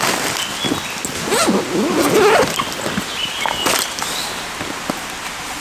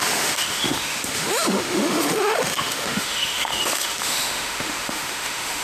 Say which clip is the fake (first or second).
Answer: second